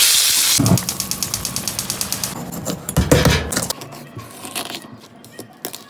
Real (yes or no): yes